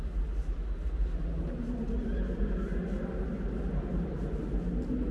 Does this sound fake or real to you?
real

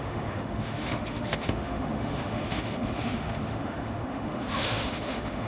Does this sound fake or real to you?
fake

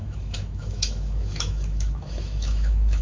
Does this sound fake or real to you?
fake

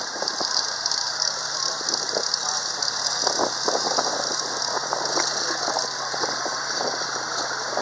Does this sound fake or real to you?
real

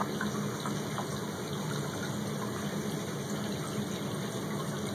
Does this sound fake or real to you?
real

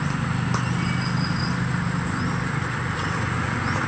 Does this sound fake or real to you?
real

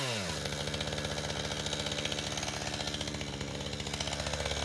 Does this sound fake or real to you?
real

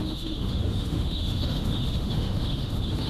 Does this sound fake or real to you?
fake